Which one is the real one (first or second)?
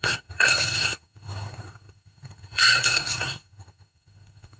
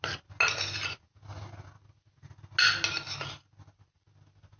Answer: second